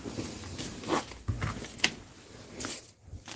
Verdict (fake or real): real